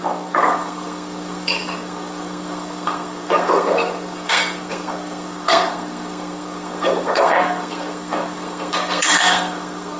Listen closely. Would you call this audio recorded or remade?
remade